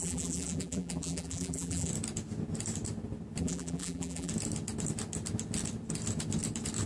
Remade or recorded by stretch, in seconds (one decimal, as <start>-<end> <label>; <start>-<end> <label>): 0.0-1.9 remade; 1.9-3.4 recorded; 3.4-4.3 remade; 4.3-6.9 recorded